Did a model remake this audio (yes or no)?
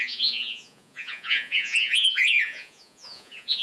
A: yes